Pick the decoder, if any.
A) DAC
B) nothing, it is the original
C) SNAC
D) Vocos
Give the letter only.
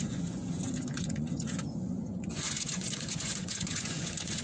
D